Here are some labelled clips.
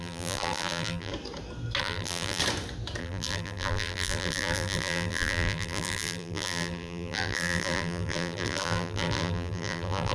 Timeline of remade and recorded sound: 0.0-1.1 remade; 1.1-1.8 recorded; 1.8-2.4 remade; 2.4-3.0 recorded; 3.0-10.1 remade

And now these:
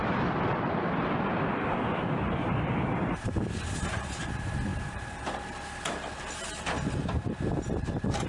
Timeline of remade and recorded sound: 0.0-8.3 recorded